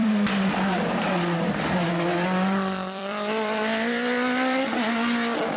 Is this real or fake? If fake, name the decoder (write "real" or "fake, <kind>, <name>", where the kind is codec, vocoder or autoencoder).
fake, vocoder, BigVGAN v2